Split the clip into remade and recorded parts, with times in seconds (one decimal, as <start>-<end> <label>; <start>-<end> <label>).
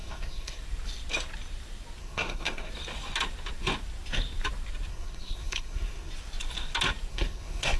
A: 0.0-0.6 remade; 0.6-2.0 recorded; 2.0-2.7 remade; 2.7-4.9 recorded; 4.9-6.1 remade; 6.1-7.1 recorded; 7.1-7.8 remade